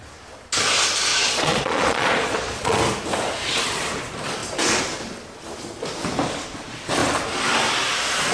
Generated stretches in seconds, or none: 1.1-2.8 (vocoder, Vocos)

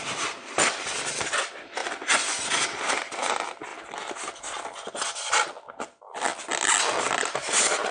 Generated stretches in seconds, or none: 1.8-2.4 (vocoder, Vocos)

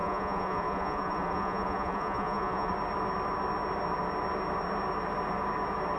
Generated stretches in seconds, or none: 0.0-2.7 (vocoder, Vocos)